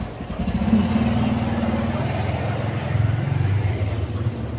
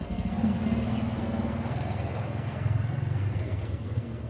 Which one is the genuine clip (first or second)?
first